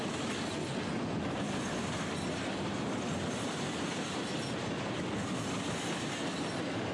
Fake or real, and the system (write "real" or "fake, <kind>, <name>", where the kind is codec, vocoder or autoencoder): real